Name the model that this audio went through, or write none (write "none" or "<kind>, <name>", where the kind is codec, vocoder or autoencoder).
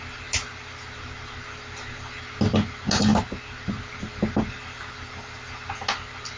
none